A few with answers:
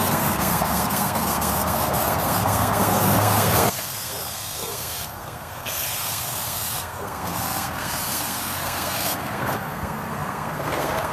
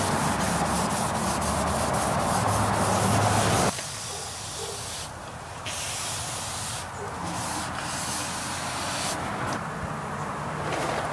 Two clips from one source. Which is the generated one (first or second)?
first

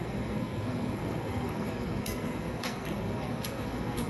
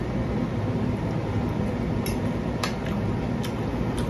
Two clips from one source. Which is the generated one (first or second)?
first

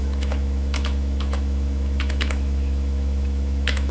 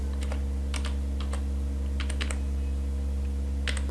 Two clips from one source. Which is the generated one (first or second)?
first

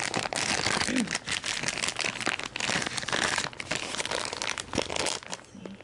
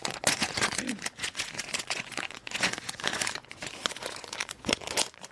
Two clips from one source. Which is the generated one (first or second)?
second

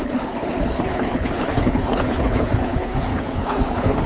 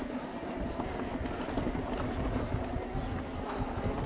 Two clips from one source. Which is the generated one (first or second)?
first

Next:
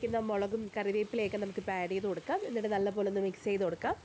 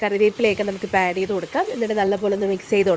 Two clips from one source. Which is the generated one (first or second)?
second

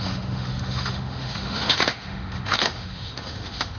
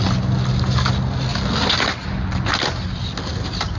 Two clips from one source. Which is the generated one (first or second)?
first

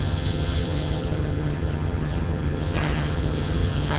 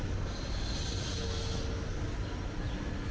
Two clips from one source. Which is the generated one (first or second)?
first